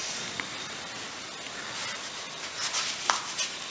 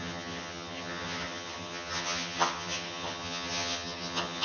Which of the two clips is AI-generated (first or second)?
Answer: second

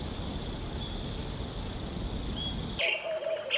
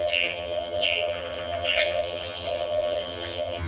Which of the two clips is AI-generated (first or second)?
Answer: second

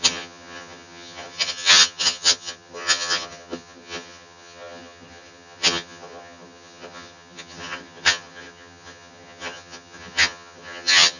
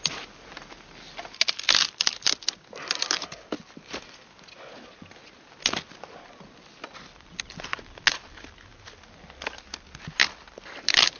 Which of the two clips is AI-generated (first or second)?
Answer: first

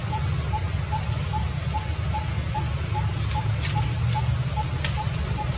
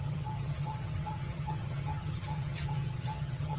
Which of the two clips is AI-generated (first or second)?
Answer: second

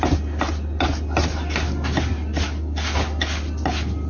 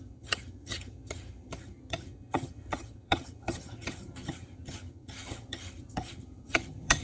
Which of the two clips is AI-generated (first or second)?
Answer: second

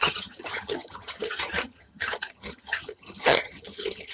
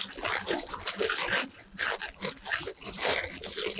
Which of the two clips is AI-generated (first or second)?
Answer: first